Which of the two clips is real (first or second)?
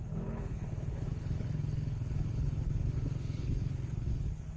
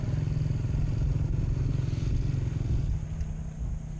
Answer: second